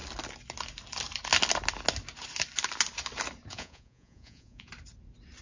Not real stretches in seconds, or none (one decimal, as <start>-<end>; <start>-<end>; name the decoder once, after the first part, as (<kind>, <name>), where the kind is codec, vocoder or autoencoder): 3.5-4.7 (vocoder, Vocos)